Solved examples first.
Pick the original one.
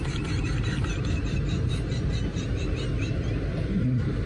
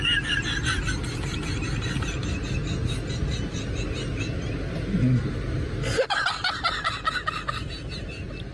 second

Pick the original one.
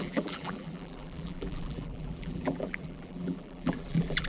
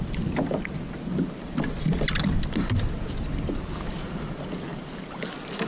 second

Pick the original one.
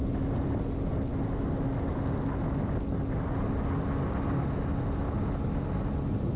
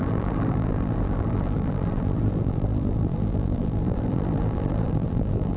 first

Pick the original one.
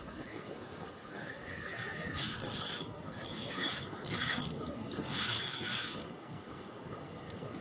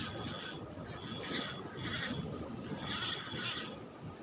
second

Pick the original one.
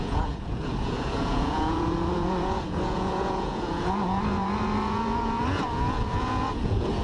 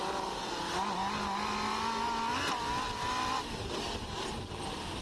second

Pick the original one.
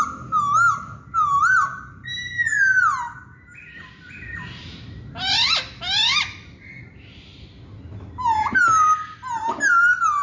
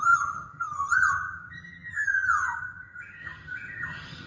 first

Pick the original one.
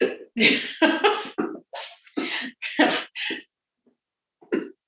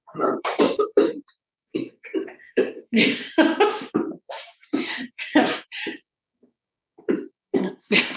first